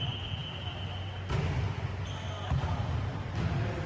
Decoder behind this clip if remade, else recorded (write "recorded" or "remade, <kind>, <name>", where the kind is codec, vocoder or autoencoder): recorded